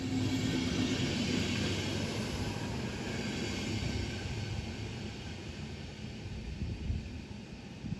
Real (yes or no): yes